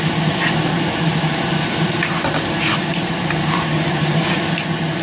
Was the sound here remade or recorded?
recorded